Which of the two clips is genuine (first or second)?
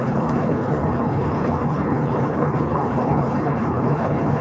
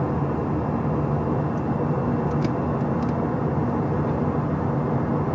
second